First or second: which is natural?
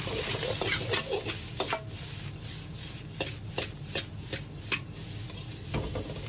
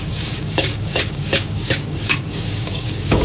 first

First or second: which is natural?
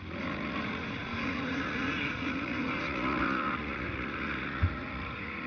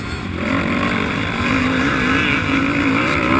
second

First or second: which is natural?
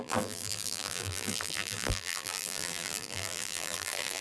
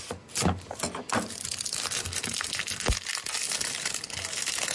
second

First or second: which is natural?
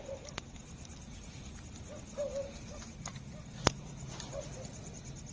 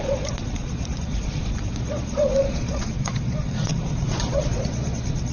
first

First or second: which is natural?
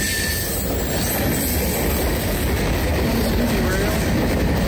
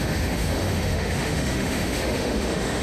first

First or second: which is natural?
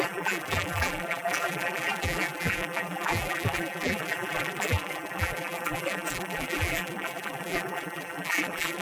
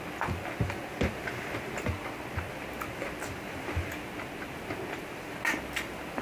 second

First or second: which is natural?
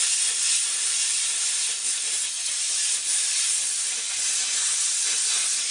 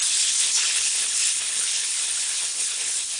first